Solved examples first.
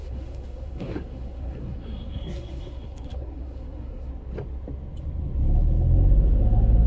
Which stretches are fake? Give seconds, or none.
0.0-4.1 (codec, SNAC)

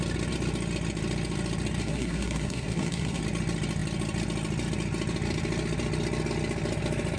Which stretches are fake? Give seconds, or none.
1.8-3.2 (codec, SNAC)